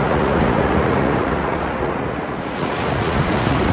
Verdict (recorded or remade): remade